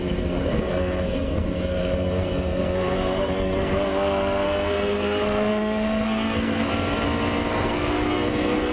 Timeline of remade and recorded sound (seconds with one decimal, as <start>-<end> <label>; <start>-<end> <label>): 0.0-6.7 remade; 6.7-7.5 recorded; 7.5-8.7 remade